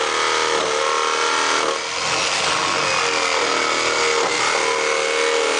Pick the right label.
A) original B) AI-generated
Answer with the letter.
A